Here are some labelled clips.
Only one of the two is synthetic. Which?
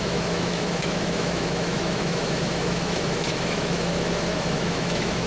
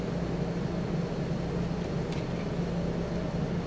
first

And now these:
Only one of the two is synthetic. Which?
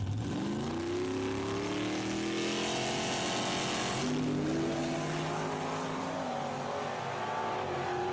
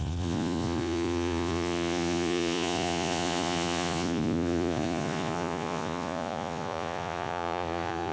second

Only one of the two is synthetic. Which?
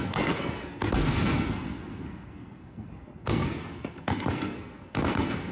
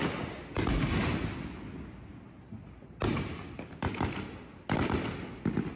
first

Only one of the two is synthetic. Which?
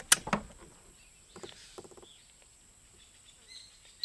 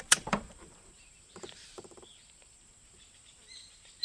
second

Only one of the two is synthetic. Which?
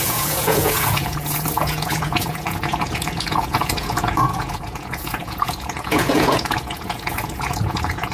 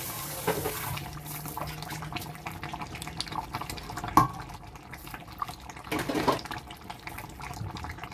first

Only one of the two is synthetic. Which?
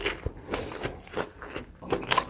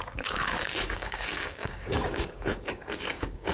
second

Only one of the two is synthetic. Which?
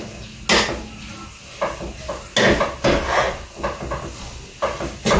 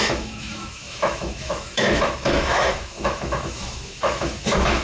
second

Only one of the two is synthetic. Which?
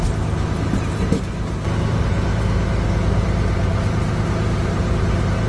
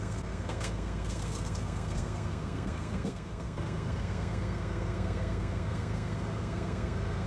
second